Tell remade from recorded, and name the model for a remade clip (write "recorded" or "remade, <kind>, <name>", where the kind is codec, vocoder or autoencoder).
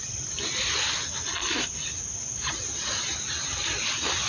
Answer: recorded